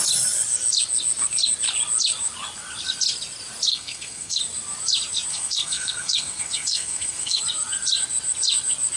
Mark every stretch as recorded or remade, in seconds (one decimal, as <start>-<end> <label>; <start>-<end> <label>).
0.0-3.7 recorded; 3.7-4.4 remade; 4.4-5.3 recorded; 5.3-7.4 remade; 7.4-9.0 recorded